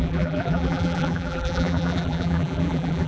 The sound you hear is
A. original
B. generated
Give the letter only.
B